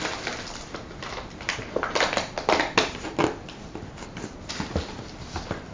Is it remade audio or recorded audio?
recorded